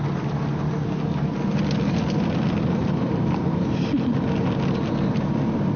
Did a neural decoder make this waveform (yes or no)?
no